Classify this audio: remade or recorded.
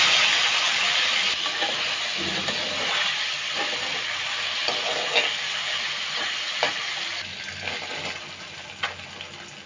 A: recorded